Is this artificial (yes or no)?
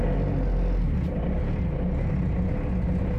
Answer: no